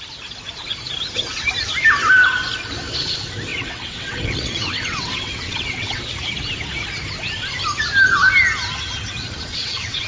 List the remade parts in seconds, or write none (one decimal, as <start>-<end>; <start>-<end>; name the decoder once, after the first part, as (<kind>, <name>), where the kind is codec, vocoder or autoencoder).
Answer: 3.5-6.0 (vocoder, WaveNeXt); 9.5-10.1